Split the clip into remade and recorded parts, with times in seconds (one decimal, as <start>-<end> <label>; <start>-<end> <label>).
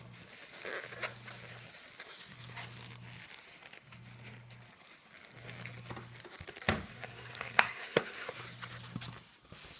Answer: 0.0-6.9 recorded; 6.9-8.3 remade; 8.3-9.8 recorded